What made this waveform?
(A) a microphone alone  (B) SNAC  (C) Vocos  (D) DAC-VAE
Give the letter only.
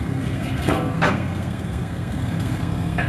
B